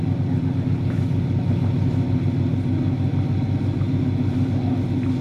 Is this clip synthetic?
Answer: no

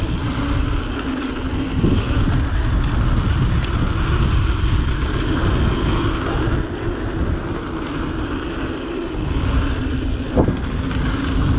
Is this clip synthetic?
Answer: no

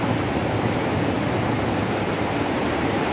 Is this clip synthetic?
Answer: no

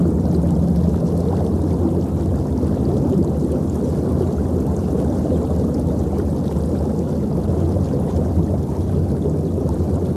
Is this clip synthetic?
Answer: no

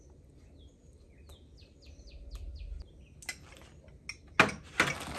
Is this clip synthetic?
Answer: no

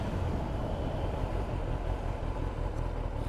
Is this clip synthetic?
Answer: no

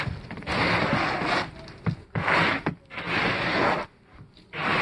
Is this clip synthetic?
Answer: no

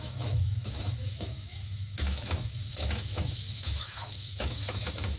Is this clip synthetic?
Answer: yes